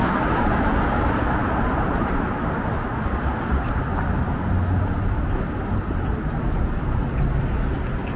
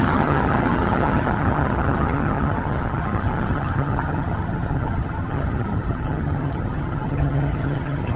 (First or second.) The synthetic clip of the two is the second